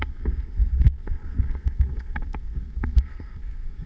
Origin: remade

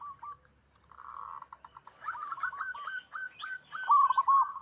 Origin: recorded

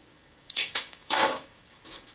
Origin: remade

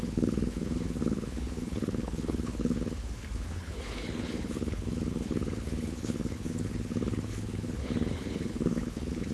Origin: remade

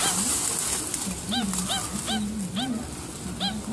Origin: recorded